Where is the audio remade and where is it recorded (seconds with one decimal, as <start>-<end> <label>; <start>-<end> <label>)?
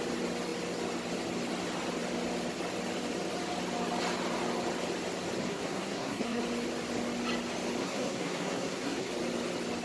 0.0-5.5 recorded; 5.5-6.4 remade; 6.4-7.8 recorded; 7.8-9.1 remade; 9.1-9.8 recorded